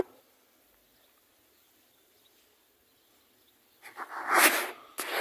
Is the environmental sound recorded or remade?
recorded